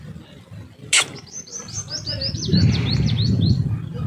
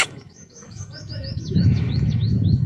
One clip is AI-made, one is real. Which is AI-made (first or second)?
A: second